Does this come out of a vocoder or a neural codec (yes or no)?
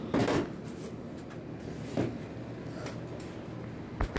no